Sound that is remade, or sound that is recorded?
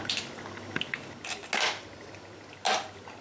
recorded